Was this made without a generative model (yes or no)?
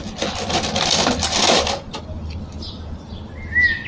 yes